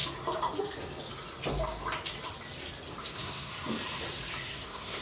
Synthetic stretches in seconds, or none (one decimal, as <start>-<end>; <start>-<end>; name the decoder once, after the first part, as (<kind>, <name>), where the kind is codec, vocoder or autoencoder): 3.0-3.5 (codec, SNAC); 4.5-5.0